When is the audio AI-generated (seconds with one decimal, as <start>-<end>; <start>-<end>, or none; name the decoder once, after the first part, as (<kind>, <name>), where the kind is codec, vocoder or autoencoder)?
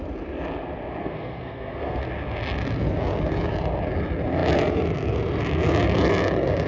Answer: 1.0-2.0 (codec, SNAC)